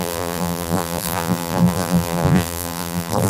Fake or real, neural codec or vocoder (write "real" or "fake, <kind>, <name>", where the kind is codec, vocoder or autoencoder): fake, vocoder, BigVGAN v2